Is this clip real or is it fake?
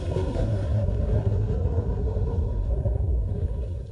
fake